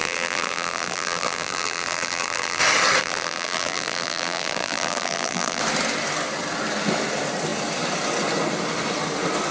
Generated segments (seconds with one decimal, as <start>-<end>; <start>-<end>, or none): 0.0-2.6; 3.0-5.6